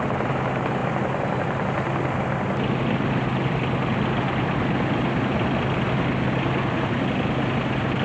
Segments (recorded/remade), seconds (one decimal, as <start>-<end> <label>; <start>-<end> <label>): 0.0-8.0 recorded